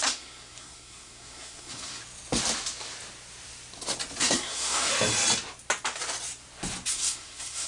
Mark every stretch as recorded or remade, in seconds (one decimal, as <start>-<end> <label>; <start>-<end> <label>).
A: 0.0-2.0 remade; 2.0-4.2 recorded; 4.2-4.9 remade; 4.9-6.9 recorded; 6.9-7.7 remade

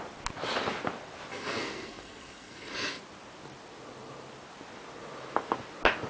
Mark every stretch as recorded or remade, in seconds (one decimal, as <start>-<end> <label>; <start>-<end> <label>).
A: 0.0-1.3 recorded; 1.3-3.0 remade; 3.0-6.1 recorded

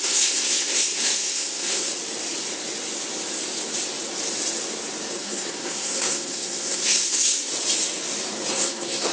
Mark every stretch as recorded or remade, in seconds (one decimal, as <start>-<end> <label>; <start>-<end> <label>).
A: 0.0-1.9 remade; 1.9-5.2 recorded; 5.2-7.5 remade; 7.5-8.5 recorded; 8.5-9.1 remade

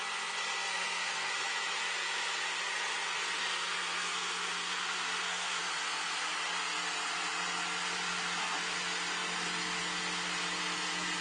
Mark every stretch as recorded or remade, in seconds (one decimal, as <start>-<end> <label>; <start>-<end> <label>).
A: 0.0-0.7 recorded; 0.7-1.3 remade; 1.3-3.4 recorded; 3.4-5.6 remade; 5.6-11.2 recorded

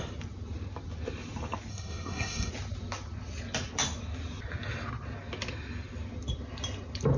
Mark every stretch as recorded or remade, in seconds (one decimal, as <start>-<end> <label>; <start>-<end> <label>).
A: 0.0-1.7 recorded; 1.7-2.5 remade; 2.5-7.2 recorded

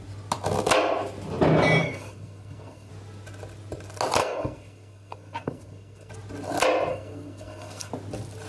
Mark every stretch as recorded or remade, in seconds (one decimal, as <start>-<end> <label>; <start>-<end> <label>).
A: 0.0-1.8 recorded; 1.8-2.9 remade; 2.9-4.2 recorded; 4.2-6.1 remade; 6.1-6.9 recorded; 6.9-7.9 remade; 7.9-8.5 recorded